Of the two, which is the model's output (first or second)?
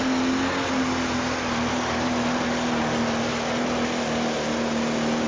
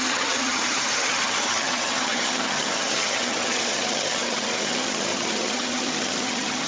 second